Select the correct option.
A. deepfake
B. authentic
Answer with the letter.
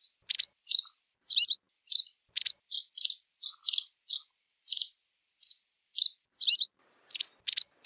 B